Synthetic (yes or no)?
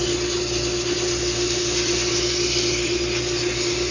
no